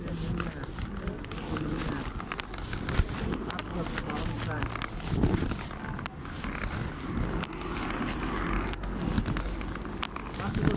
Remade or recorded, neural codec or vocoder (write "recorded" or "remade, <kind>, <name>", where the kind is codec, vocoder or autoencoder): recorded